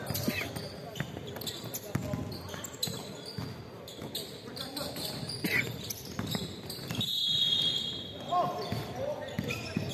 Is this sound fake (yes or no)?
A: no